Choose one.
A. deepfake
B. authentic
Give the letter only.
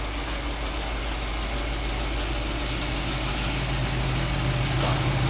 B